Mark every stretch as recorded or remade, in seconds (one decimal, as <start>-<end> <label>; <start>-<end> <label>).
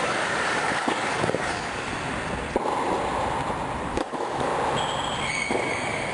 0.0-1.9 remade; 1.9-3.8 recorded; 3.8-4.5 remade; 4.5-5.3 recorded; 5.3-6.1 remade